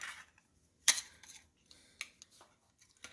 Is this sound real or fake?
real